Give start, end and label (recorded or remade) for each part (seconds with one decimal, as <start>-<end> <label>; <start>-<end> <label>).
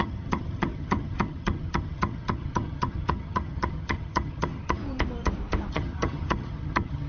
0.0-4.8 remade; 4.8-5.7 recorded; 5.7-7.1 remade